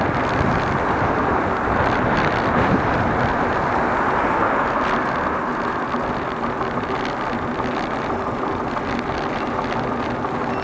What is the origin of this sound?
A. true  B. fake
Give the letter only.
A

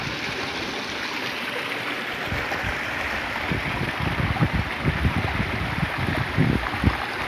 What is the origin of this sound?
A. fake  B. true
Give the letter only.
B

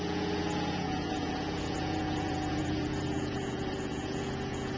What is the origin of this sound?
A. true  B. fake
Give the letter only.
B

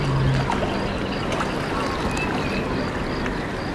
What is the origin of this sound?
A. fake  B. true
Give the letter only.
B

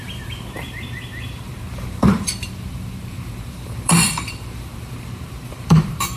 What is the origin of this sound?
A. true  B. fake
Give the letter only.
B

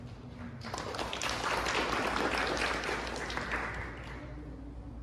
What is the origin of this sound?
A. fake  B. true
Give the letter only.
B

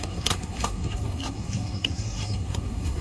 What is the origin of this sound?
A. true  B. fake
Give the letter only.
B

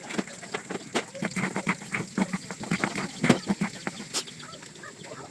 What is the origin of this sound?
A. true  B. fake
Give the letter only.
A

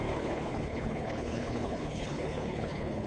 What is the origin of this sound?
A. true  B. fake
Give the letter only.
B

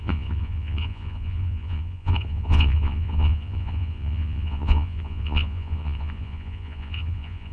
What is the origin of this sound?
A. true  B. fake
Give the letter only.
B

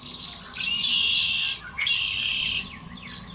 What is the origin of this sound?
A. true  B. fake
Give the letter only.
A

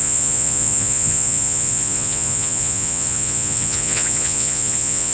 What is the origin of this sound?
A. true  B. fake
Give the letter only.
B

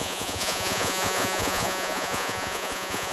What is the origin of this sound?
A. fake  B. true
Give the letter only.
A